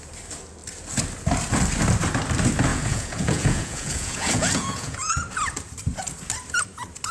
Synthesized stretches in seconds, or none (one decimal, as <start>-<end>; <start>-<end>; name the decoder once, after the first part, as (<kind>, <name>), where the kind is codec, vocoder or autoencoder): 2.7-5.1 (vocoder, Vocos)